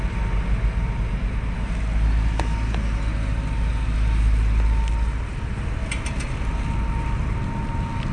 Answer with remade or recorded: recorded